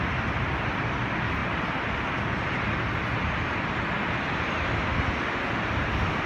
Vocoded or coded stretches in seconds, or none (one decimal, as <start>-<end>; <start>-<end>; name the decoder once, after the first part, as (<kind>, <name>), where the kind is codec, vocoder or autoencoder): none